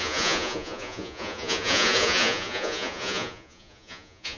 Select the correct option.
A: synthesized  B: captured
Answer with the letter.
A